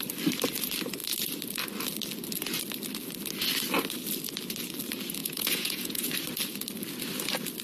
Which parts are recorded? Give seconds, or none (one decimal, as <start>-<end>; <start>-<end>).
0.0-5.2; 6.1-7.6